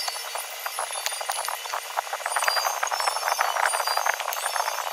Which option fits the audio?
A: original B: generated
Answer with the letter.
A